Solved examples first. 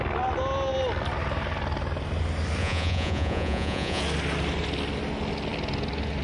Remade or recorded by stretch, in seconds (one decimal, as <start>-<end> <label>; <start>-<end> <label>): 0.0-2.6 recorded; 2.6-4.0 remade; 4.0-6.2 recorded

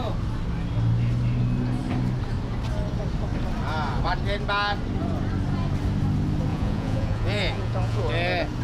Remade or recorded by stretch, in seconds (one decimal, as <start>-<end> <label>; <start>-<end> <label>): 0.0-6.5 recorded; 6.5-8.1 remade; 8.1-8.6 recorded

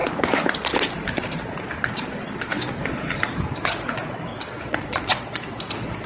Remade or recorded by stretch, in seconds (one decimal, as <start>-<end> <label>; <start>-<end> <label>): 0.0-4.3 recorded; 4.3-5.6 remade; 5.6-6.1 recorded